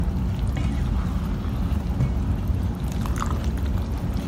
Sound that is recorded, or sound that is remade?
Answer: recorded